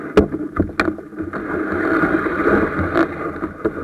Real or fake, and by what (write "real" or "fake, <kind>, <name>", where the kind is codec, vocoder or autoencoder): real